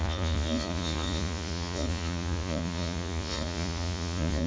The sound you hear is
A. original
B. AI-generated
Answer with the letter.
B